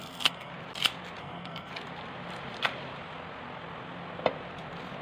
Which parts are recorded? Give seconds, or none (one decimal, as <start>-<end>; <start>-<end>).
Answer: 0.5-1.2; 1.7-5.0